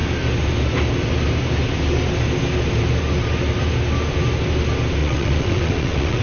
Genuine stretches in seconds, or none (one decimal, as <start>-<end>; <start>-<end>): 0.0-5.0